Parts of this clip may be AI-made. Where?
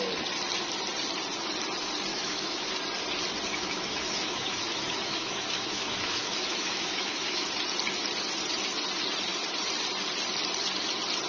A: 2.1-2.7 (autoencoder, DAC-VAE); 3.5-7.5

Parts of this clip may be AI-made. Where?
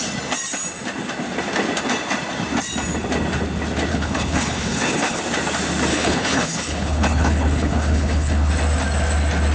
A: 3.9-5.2 (codec, HILCodec); 5.9-8.5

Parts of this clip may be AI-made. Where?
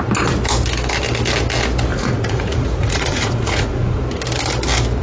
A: 1.9-4.0 (vocoder, Vocos)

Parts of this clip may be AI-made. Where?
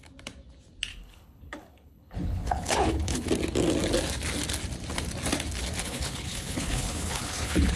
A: 0.9-3.3 (codec, HILCodec); 5.8-7.8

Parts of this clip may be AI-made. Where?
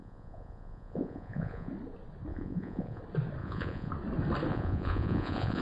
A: 0.0-1.7 (vocoder, Vocos); 2.3-3.0; 3.4-3.9; 4.5-5.6